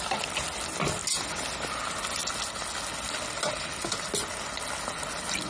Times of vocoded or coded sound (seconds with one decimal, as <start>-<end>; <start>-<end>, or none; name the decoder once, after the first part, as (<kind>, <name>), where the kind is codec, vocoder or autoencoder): none